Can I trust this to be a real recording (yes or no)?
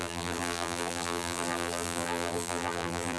no